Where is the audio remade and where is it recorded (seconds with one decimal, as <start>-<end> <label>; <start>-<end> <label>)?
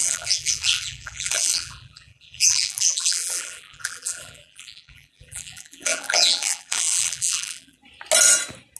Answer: 0.0-7.8 remade; 7.8-8.8 recorded